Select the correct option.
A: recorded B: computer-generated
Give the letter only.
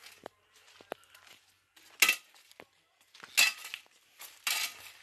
A